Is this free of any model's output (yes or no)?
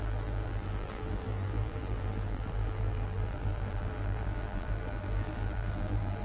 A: no